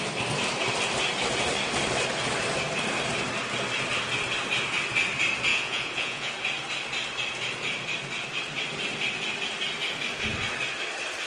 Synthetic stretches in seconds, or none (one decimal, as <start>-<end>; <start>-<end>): 5.5-6.3